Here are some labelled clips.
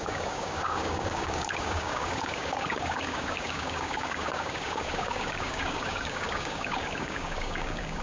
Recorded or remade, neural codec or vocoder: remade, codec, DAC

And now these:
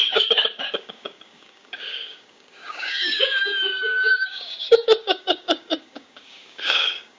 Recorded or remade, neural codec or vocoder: remade, codec, DAC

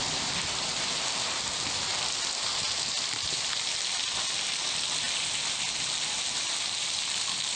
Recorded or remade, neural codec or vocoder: recorded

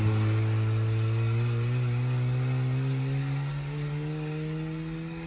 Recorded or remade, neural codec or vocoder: recorded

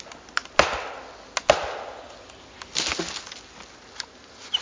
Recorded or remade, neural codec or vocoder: recorded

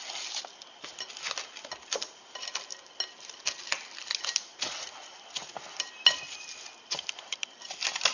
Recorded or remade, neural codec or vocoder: recorded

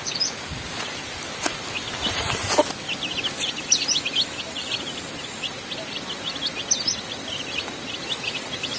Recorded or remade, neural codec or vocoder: recorded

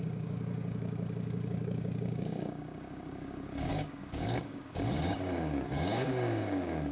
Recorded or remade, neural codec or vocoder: remade, codec, DAC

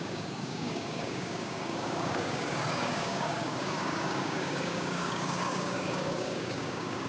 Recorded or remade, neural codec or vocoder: remade, codec, DAC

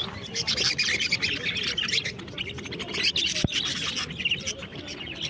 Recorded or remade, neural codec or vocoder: recorded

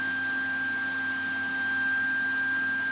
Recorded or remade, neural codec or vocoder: recorded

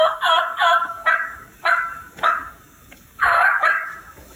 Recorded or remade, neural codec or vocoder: remade, codec, DAC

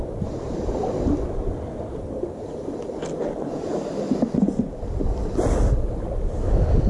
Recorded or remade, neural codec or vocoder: recorded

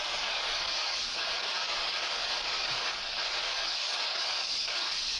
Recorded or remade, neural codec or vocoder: remade, codec, DAC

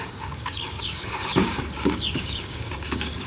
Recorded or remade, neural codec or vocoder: remade, codec, DAC